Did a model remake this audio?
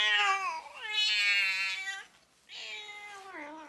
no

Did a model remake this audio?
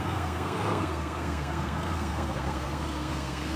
yes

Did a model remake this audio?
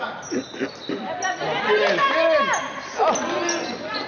no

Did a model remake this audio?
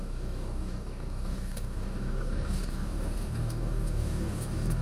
yes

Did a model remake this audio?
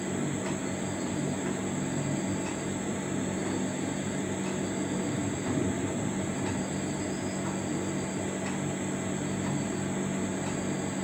no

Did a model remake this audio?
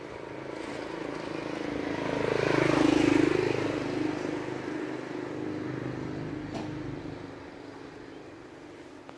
no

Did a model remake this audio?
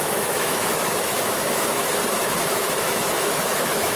yes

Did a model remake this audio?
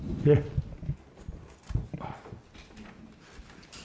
no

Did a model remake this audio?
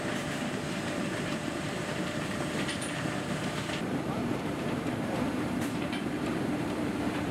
yes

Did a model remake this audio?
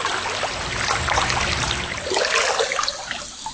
no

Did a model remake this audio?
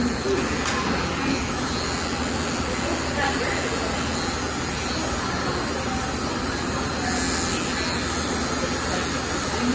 no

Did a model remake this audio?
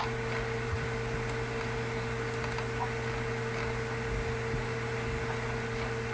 no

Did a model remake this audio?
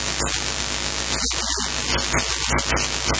no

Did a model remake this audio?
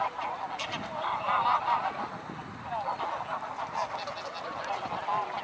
no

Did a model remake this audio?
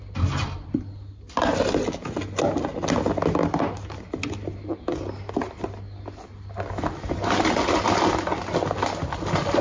no